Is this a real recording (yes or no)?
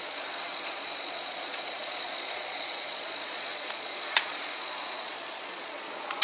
no